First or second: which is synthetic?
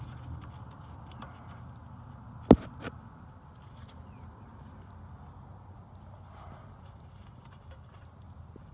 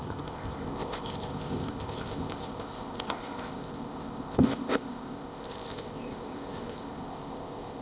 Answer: second